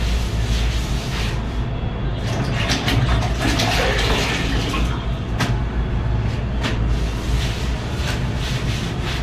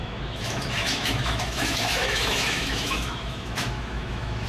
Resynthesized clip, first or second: second